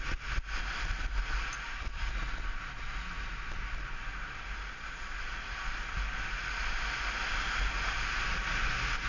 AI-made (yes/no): no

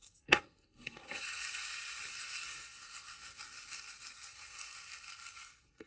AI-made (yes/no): yes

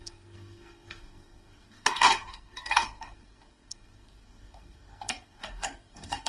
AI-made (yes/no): yes